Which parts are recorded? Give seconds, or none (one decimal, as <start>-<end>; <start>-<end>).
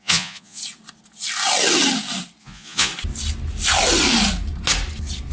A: 0.6-2.4; 2.9-5.3